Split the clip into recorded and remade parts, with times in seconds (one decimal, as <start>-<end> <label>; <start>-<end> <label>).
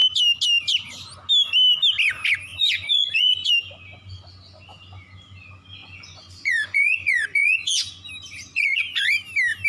0.0-2.5 recorded; 2.5-3.5 remade; 3.5-5.8 recorded; 5.8-8.1 remade; 8.1-8.5 recorded; 8.5-9.1 remade; 9.1-9.7 recorded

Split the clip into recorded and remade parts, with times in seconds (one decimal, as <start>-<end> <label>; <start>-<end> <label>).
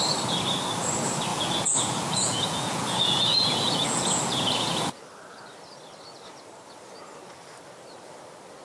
0.0-1.3 recorded; 1.3-5.0 remade; 5.0-8.6 recorded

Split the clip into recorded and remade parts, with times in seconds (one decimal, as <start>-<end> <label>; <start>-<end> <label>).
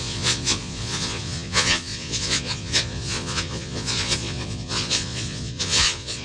0.0-6.2 remade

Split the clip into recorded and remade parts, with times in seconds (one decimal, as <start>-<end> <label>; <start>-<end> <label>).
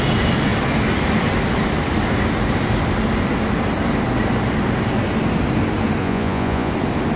0.0-6.0 recorded; 6.0-6.7 remade; 6.7-7.2 recorded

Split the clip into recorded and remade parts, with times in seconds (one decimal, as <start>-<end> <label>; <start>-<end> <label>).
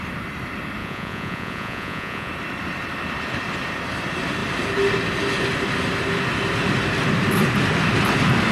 0.0-0.8 recorded; 0.8-2.3 remade; 2.3-8.5 recorded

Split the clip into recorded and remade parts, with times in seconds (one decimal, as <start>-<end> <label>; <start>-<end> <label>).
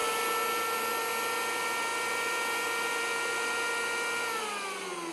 0.0-5.1 recorded